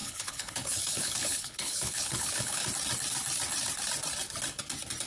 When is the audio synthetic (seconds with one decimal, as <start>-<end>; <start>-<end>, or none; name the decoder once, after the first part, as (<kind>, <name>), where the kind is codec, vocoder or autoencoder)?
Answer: 0.0-2.6 (codec, HILCodec)